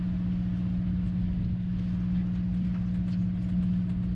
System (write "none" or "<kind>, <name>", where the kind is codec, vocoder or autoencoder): none